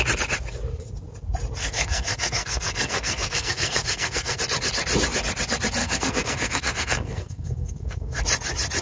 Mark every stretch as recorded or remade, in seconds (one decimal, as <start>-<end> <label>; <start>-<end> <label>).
0.0-1.6 recorded; 1.6-4.4 remade; 4.4-5.8 recorded; 5.8-8.2 remade; 8.2-8.8 recorded